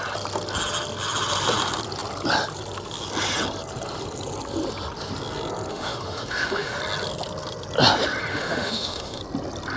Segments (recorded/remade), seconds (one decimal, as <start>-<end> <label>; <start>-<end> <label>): 0.0-5.7 recorded; 5.7-6.8 remade; 6.8-8.3 recorded; 8.3-9.2 remade; 9.2-9.8 recorded